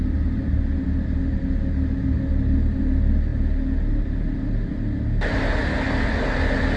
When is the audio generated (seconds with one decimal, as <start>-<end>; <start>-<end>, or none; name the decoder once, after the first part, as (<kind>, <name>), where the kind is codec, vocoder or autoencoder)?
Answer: none